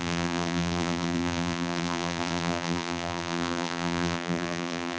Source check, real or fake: fake